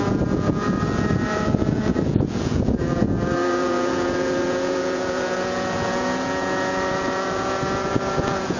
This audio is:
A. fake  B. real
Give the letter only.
A